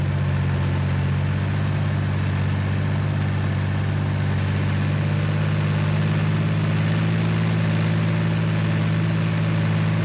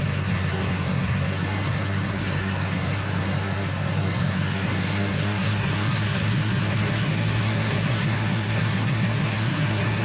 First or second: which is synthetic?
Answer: second